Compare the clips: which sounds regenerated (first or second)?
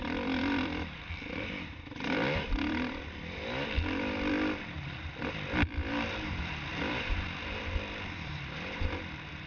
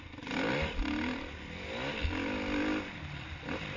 first